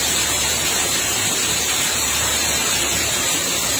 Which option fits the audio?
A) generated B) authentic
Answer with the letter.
A